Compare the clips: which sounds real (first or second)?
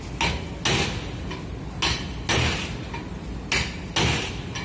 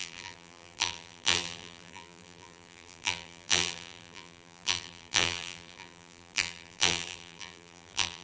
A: first